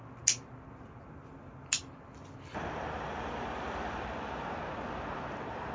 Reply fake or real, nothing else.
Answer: real